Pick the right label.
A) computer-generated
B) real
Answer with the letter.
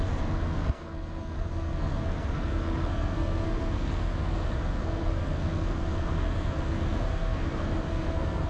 A